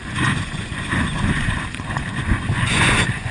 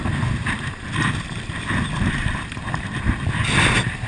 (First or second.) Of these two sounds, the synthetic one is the first